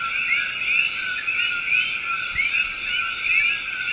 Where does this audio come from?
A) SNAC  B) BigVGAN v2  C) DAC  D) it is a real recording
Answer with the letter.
D